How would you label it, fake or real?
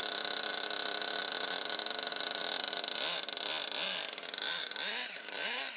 real